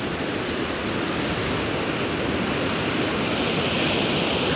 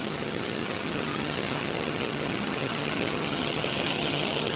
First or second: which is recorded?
first